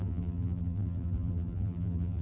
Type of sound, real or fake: fake